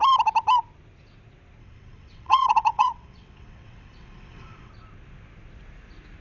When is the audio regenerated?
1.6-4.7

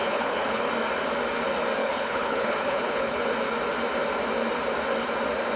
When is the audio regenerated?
0.0-0.7; 1.8-3.2

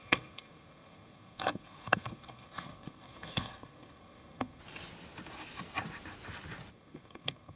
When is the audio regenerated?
0.0-4.6; 6.7-7.6

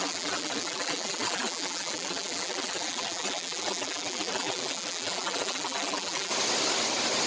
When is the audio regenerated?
0.0-6.3

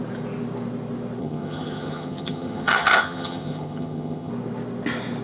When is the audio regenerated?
1.2-4.3

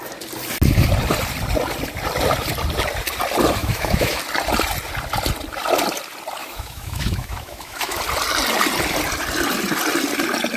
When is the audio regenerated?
3.6-4.2; 6.4-8.0

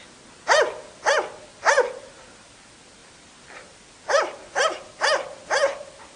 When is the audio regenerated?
3.0-4.9